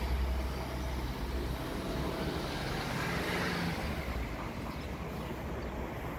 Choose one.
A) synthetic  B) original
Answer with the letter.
B